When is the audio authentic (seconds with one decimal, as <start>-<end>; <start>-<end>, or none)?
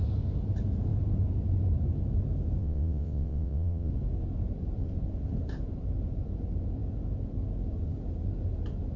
0.0-2.6; 3.9-9.0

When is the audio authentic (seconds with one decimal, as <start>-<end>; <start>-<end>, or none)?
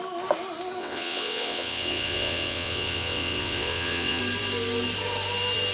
0.0-0.8; 4.2-5.7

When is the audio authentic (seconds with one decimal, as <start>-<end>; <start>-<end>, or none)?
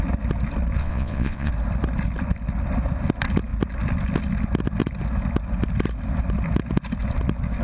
0.0-0.8; 1.5-7.6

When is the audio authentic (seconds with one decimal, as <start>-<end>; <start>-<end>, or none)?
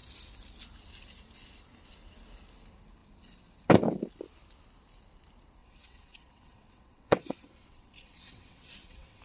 0.0-5.6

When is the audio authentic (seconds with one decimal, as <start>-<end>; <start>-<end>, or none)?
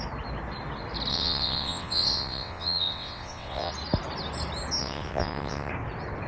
0.0-1.1; 3.7-4.8; 5.7-6.3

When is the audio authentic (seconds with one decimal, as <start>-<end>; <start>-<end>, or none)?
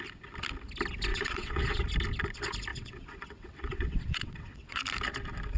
0.0-1.1; 1.8-2.7; 4.8-5.6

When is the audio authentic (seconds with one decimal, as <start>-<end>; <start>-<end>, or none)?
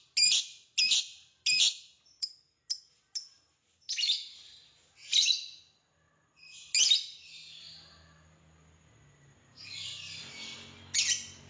0.0-11.5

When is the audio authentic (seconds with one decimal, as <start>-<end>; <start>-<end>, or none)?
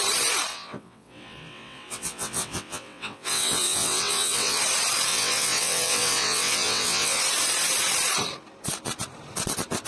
0.0-0.5; 4.6-5.1; 7.2-9.9